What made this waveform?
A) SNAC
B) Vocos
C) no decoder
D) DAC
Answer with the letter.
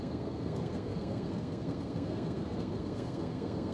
A